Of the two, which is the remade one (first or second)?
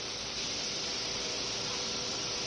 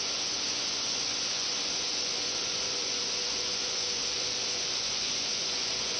second